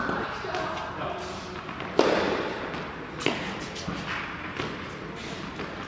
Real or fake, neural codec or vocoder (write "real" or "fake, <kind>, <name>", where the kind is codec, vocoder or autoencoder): real